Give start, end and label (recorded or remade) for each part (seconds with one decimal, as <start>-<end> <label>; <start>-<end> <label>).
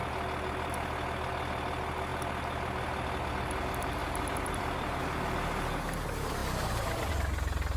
0.0-4.0 recorded; 4.0-5.0 remade; 5.0-6.4 recorded; 6.4-7.1 remade; 7.1-7.8 recorded